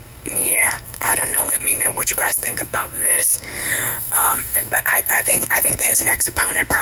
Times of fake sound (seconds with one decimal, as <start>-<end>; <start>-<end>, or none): 0.0-6.8